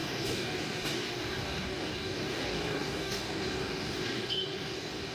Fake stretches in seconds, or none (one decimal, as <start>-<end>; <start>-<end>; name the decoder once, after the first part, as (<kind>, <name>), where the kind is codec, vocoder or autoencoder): 0.0-5.1 (codec, DAC)